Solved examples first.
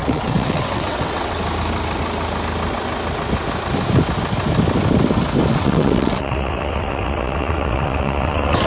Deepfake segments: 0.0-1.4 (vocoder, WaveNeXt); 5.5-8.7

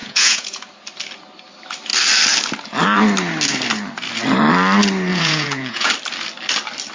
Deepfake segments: 0.0-0.7 (vocoder, Vocos); 5.1-5.9

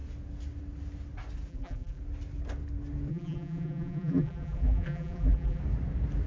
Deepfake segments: 1.5-2.0 (vocoder, BigVGAN v2); 3.1-5.6

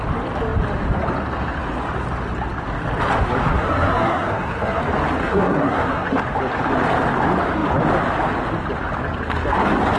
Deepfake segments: 3.5-4.8 (codec, SNAC); 5.2-6.2

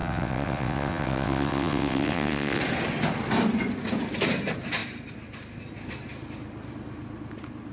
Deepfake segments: 0.0-2.6 (vocoder, WaveNeXt)

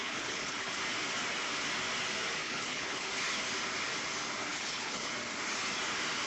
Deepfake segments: 0.0-0.8 (codec, HILCodec); 2.4-3.1; 4.5-5.1